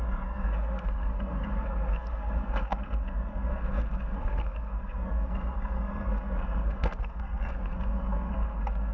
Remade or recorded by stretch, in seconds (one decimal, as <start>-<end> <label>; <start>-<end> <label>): 0.0-8.9 remade